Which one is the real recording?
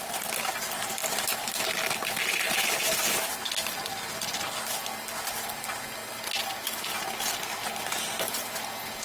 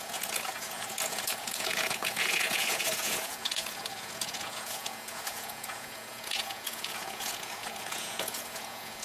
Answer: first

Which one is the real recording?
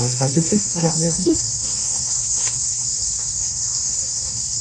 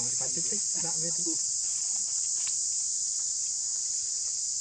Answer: second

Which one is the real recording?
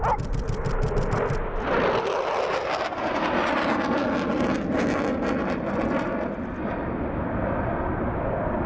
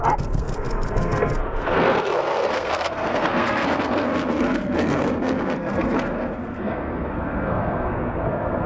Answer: first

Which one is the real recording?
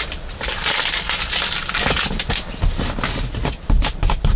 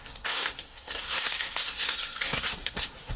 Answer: first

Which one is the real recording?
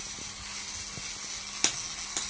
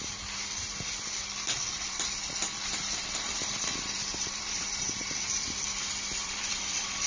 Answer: first